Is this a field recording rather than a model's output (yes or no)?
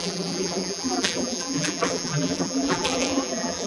no